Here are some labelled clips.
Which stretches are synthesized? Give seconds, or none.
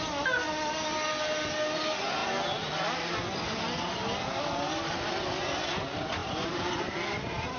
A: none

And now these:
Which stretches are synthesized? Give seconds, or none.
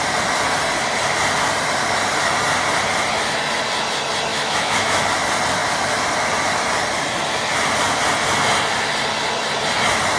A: 4.3-5.0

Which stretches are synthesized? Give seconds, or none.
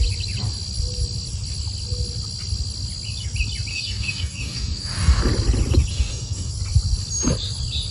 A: 3.7-5.2; 5.9-6.5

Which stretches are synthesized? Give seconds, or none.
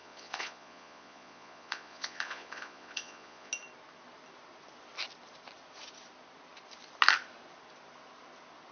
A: 0.0-3.5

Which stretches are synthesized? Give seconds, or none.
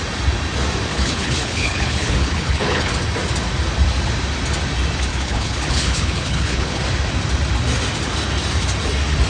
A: 0.9-2.9; 5.1-6.8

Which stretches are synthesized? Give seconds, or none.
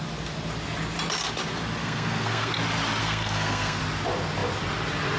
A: 1.8-2.5; 3.0-3.8